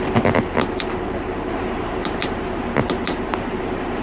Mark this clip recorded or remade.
recorded